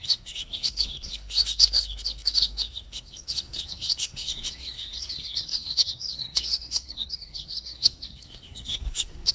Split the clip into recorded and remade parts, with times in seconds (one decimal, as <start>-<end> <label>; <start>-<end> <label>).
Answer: 0.0-9.3 remade